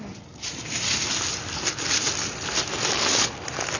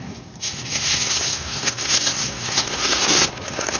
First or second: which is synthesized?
second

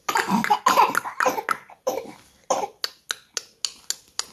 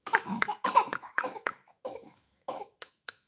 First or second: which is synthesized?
second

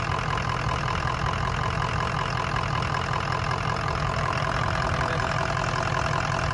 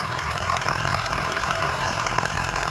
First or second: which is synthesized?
second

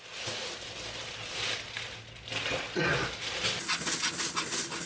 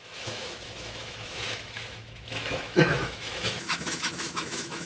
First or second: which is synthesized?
second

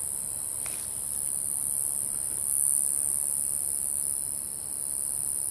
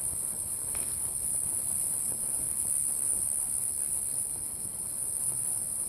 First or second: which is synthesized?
second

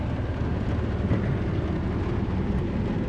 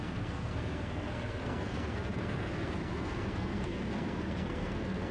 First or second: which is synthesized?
second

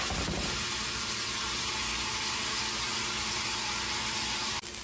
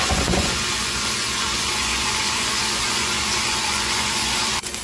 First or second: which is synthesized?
second